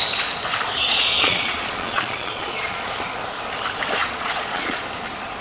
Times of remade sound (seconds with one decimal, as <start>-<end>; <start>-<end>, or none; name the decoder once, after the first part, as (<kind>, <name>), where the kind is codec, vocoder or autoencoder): 0.8-2.9 (vocoder, Vocos); 4.0-4.8